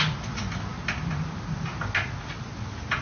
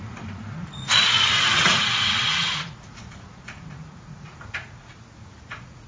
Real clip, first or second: first